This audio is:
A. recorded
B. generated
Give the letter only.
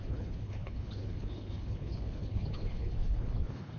B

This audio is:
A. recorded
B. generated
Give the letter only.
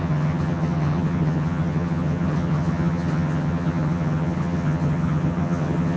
B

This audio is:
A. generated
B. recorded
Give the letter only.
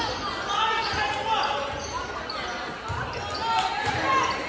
B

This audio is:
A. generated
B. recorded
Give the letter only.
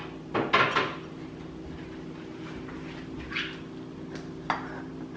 B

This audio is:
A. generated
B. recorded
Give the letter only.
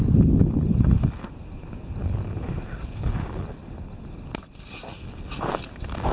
B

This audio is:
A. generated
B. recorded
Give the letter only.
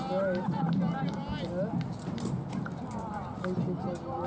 B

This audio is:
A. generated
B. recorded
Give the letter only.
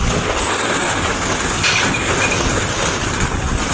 B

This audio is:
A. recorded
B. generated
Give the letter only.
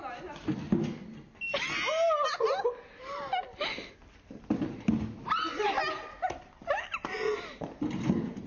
A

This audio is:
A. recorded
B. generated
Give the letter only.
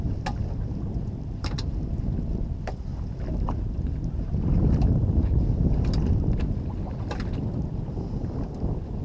A